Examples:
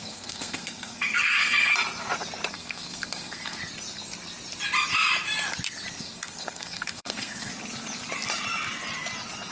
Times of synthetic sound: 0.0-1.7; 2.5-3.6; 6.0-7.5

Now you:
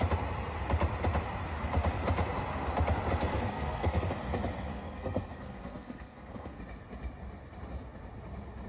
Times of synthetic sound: 3.3-4.1; 4.7-6.6